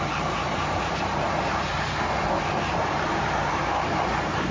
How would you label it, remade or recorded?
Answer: remade